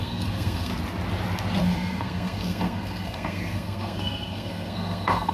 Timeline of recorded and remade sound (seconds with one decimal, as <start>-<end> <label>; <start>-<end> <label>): 0.0-0.7 remade; 0.7-1.6 recorded; 1.6-5.3 remade